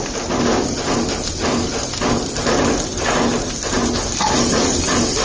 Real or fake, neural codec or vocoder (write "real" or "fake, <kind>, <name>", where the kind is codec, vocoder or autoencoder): real